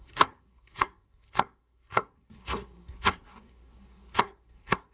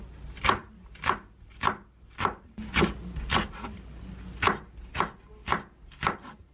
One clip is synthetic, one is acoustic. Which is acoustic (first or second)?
second